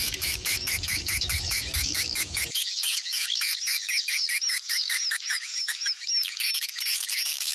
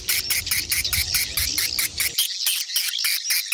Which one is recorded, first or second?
second